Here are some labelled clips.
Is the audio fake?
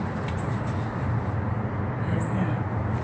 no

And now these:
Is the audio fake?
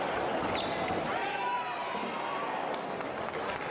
no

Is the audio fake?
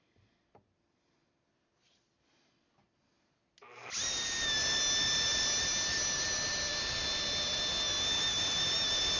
no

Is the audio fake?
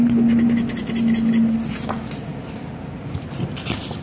no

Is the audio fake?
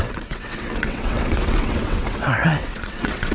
yes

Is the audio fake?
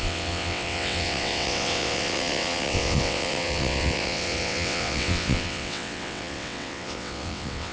yes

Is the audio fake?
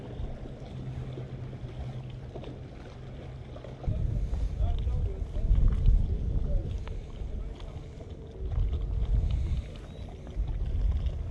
no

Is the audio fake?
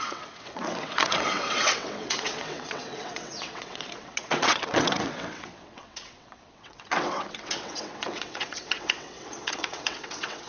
yes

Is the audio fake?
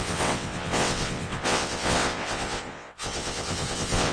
yes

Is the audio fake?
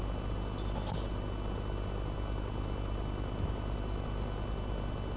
no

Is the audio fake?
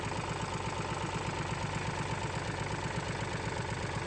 no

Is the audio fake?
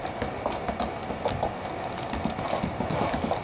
no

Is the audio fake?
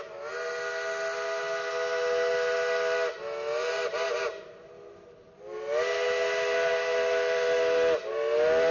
no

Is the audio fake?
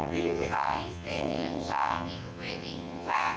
yes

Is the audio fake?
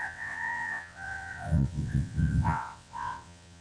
yes